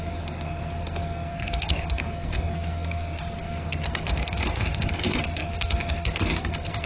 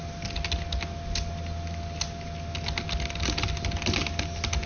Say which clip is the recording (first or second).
second